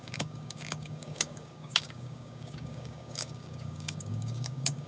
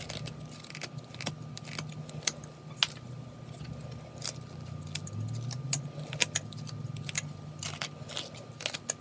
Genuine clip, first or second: second